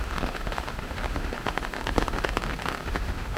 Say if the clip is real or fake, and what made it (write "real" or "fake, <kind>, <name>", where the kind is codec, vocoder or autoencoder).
fake, autoencoder, DAC-VAE